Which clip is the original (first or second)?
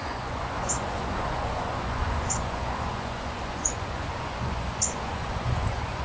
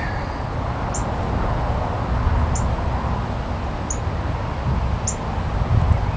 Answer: second